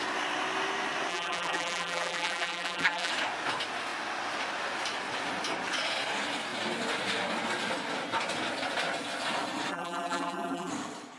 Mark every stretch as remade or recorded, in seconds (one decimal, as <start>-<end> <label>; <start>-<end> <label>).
0.0-1.1 recorded; 1.1-3.1 remade; 3.1-9.7 recorded; 9.7-10.7 remade; 10.7-11.2 recorded